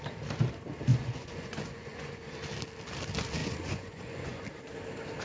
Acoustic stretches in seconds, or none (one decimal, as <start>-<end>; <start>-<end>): 0.0-0.9; 2.3-3.4; 4.4-5.2